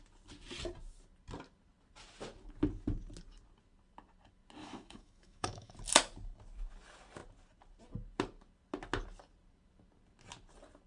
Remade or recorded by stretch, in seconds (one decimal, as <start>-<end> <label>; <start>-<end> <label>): 0.0-4.6 recorded; 4.6-5.7 remade; 5.7-10.9 recorded